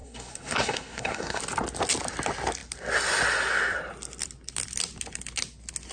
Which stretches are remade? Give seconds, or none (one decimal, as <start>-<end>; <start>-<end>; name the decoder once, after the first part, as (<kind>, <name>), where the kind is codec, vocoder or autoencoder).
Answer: 0.0-1.4 (codec, SNAC)